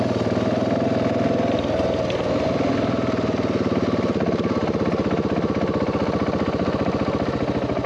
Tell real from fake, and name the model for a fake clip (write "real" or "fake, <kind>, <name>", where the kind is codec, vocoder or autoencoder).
real